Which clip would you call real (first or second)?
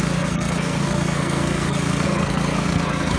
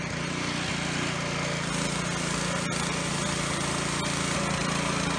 second